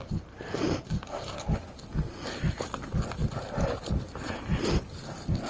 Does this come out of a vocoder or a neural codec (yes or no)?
no